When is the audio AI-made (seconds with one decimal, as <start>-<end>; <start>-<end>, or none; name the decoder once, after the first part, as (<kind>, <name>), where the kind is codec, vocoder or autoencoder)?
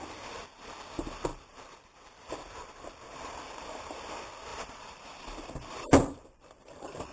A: 1.3-2.3 (vocoder, BigVGAN v2); 4.5-7.1